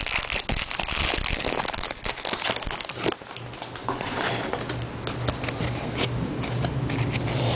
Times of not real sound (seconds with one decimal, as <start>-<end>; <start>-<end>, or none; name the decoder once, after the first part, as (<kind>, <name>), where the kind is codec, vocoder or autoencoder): 3.8-4.3 (vocoder, Vocos)